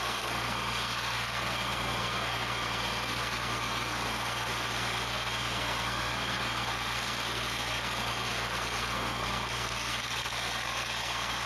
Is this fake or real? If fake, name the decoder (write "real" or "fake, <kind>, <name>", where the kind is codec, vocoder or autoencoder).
fake, codec, SNAC